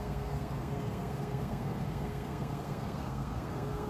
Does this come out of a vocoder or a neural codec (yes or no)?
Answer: yes